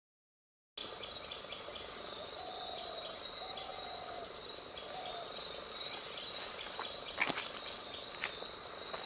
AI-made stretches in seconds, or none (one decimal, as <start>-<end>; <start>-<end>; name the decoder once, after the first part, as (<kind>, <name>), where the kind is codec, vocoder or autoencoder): 0.8-2.5 (vocoder, BigVGAN v2); 3.7-8.1